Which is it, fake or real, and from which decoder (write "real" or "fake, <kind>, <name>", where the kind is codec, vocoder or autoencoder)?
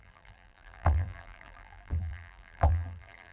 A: fake, vocoder, BigVGAN v2